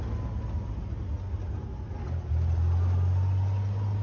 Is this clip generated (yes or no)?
no